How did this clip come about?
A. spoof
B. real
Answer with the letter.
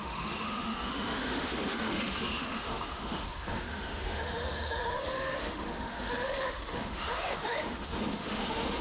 A